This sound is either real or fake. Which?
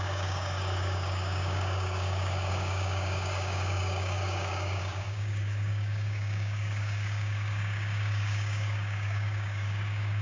fake